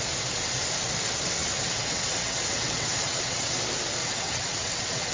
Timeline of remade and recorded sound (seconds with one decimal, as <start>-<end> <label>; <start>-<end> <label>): 0.0-1.4 recorded; 1.4-3.5 remade; 3.5-4.0 recorded; 4.0-5.1 remade